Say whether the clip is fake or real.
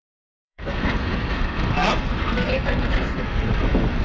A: fake